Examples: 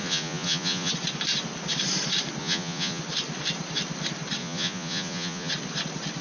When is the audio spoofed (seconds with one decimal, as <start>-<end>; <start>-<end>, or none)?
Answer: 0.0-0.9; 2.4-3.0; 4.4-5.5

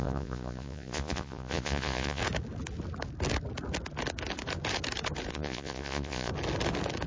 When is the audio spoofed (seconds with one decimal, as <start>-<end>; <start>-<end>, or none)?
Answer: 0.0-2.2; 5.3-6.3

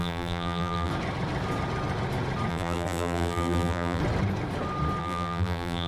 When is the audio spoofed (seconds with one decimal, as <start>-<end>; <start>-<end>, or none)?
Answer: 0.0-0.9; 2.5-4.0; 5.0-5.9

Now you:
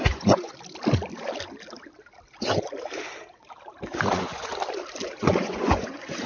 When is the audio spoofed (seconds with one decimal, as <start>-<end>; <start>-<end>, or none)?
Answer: 0.0-0.5; 4.1-4.5; 5.2-6.3

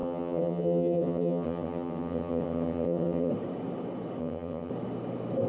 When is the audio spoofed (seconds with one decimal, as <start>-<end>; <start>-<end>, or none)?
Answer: 0.0-3.3; 4.2-4.7

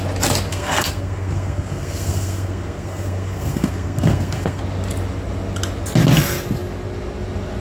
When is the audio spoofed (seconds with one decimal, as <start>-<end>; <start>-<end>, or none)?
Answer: 0.5-4.6